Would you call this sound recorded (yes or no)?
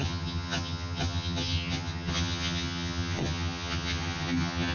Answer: no